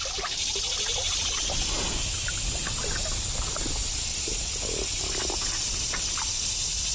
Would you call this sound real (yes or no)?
yes